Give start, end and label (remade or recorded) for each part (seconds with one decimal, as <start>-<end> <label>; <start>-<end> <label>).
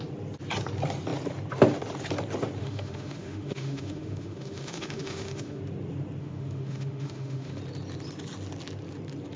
0.0-2.6 recorded; 2.6-5.6 remade; 5.6-6.2 recorded; 6.2-7.6 remade; 7.6-9.4 recorded